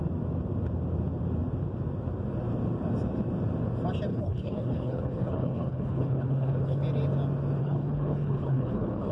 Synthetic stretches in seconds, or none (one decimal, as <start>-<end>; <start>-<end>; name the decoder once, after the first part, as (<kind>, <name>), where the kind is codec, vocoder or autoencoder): 4.1-6.8 (codec, HILCodec); 7.6-9.1